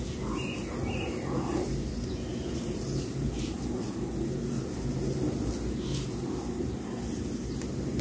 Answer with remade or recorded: recorded